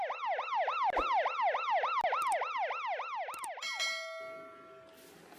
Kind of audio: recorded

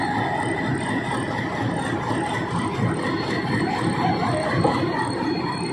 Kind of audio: recorded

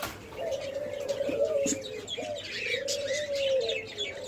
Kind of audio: recorded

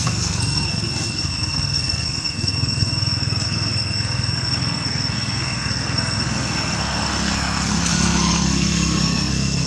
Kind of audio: remade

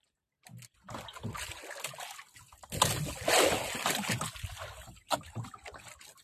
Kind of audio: recorded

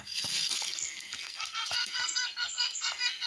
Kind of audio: remade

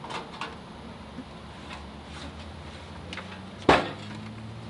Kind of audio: recorded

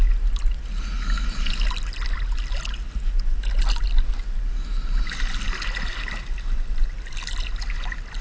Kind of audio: recorded